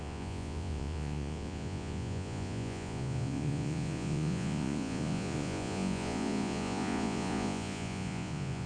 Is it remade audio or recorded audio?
remade